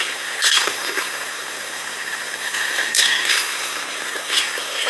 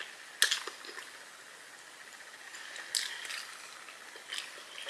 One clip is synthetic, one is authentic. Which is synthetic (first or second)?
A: first